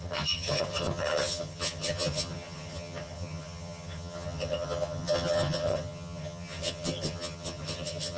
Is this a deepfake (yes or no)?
yes